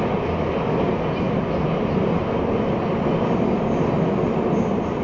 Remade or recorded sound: recorded